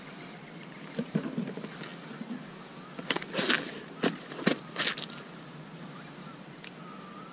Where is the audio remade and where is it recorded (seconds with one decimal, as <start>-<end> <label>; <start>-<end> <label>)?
0.0-7.3 recorded